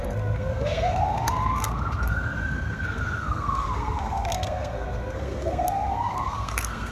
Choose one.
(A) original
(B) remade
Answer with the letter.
B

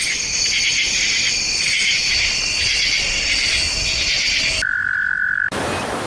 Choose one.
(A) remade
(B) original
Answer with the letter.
B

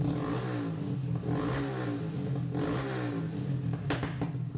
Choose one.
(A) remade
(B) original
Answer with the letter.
B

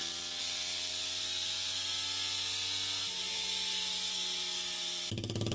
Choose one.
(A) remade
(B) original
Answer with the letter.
B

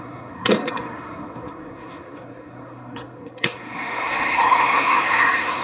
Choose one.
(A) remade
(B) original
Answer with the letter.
A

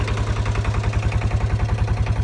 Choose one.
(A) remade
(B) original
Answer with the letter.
B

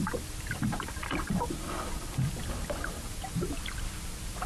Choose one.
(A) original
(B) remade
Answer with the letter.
A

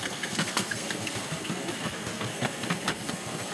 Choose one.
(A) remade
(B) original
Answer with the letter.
A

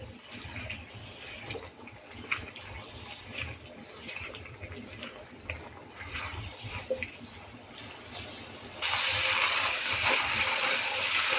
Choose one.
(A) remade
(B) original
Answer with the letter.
B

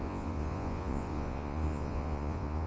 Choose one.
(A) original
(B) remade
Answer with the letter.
B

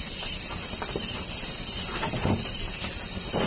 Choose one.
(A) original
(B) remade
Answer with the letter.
A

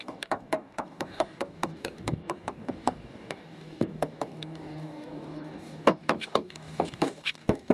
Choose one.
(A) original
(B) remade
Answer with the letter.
B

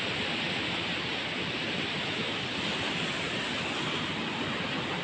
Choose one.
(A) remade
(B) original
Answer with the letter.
B